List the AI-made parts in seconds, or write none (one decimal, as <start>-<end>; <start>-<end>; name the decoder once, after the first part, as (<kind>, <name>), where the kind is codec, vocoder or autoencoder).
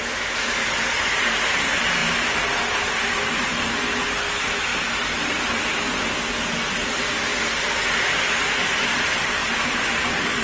0.0-4.7 (vocoder, BigVGAN v2); 6.5-7.3; 8.8-10.4